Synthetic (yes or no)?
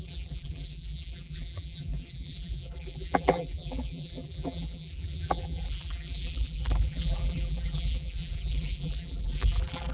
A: yes